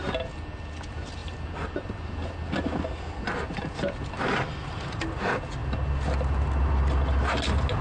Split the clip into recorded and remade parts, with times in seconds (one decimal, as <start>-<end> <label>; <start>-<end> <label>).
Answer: 0.0-7.8 recorded